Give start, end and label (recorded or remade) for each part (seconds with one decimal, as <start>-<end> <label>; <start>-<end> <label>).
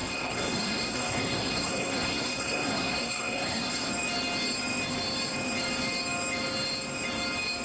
0.0-3.9 remade; 3.9-7.6 recorded